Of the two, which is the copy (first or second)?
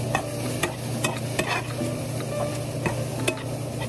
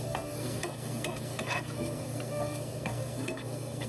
second